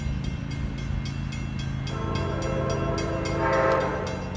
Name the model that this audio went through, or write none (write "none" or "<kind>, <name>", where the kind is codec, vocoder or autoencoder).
none